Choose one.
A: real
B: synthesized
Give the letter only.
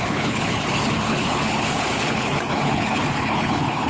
B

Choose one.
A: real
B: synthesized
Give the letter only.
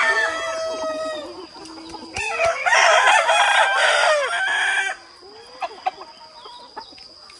A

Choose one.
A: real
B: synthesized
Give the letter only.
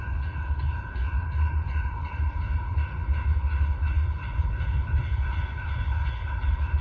B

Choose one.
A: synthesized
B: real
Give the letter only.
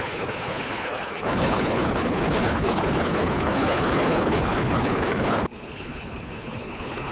A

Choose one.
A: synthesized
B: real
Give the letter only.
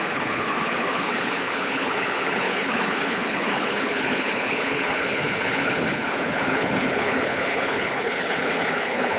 A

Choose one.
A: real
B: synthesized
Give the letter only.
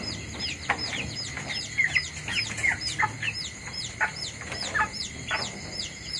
A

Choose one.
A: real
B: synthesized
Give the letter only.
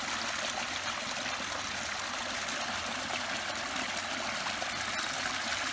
A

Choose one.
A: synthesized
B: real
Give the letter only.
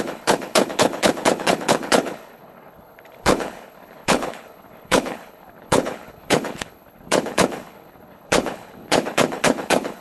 A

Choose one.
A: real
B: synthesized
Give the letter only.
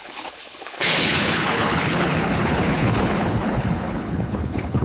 B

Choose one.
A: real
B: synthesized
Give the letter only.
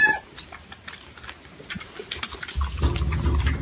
A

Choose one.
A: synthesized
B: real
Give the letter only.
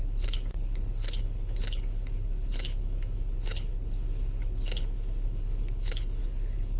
A